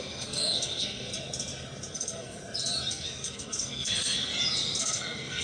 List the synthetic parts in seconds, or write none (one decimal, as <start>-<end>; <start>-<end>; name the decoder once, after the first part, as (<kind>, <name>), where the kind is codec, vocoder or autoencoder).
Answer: 0.0-1.1 (codec, SNAC); 1.9-2.4; 2.9-4.3; 4.8-5.4